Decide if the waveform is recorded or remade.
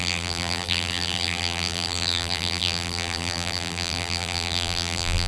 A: remade